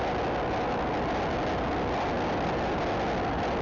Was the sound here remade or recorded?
recorded